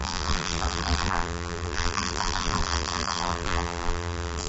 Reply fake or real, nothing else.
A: fake